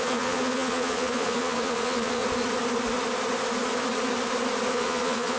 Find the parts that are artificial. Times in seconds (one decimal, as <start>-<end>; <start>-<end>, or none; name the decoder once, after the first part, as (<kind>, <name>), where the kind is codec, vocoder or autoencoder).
0.0-2.2 (vocoder, Vocos); 4.7-5.4